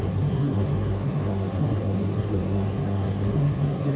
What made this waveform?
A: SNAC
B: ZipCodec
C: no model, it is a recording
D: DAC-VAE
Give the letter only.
A